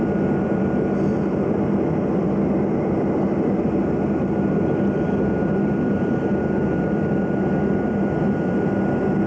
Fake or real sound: real